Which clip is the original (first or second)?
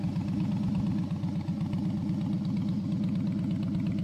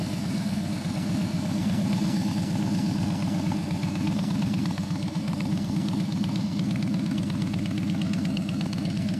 first